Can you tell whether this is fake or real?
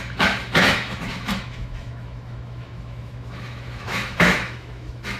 fake